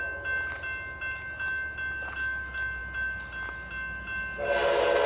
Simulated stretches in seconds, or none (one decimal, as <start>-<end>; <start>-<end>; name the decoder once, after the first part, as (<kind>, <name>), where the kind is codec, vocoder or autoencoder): none